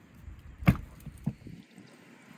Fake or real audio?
real